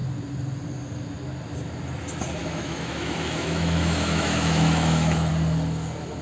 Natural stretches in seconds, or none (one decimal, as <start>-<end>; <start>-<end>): 0.0-2.4; 5.3-6.2